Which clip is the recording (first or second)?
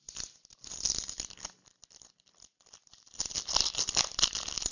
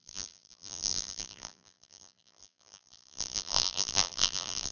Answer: first